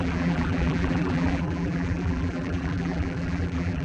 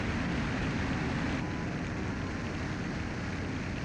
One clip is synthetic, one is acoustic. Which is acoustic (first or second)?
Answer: second